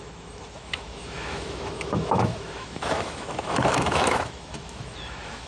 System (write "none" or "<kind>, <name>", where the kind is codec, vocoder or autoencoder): autoencoder, DAC-VAE